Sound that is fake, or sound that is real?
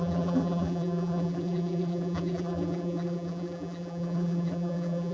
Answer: fake